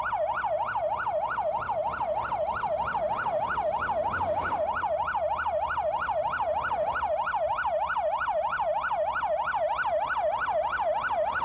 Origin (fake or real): real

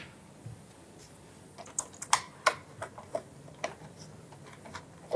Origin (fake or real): real